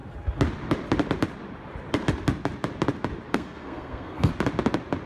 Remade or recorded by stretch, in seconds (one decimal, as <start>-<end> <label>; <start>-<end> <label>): 0.0-3.3 recorded; 3.3-4.3 remade; 4.3-5.1 recorded